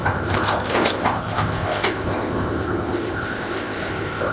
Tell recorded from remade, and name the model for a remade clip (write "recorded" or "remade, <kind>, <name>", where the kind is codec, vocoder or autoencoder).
remade, codec, ZipCodec